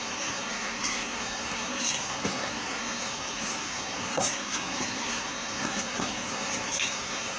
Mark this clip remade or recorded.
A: remade